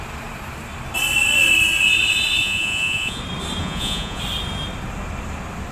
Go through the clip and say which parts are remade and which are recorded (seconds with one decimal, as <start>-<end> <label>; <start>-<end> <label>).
0.0-2.4 recorded; 2.4-3.2 remade; 3.2-3.6 recorded; 3.6-4.2 remade; 4.2-5.7 recorded